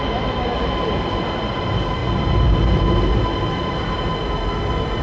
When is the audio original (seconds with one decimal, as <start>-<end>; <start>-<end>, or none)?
0.0-5.0